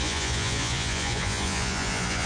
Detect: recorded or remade remade